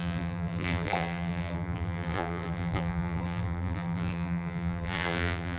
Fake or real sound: fake